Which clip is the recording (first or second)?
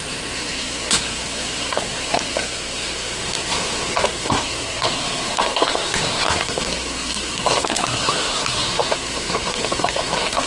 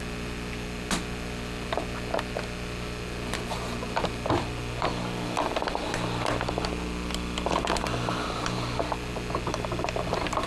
second